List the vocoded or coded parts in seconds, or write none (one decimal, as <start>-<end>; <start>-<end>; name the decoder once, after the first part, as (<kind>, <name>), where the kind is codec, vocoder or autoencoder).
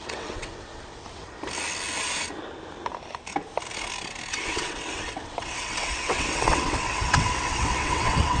0.0-1.4 (vocoder, WaveNeXt); 4.3-8.4